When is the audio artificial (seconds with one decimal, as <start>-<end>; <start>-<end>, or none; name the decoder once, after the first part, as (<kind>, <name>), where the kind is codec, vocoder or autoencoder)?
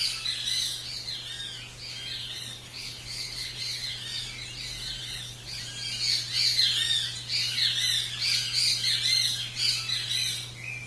2.2-3.6 (codec, HILCodec); 5.0-5.6